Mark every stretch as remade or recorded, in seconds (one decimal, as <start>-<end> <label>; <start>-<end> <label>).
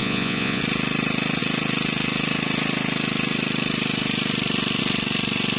0.0-0.6 remade; 0.6-5.6 recorded